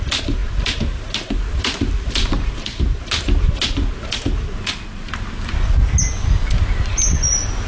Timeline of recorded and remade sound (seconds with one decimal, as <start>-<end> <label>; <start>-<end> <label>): 0.0-7.7 recorded